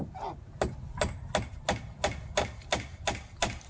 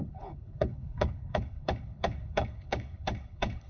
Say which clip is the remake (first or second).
second